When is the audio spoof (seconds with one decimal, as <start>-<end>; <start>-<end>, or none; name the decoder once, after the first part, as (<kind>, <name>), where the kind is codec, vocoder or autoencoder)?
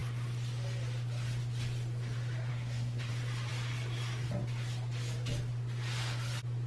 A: 2.5-3.1 (codec, SNAC)